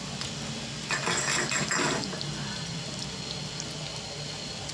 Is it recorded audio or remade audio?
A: recorded